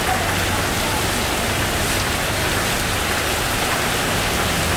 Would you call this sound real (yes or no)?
yes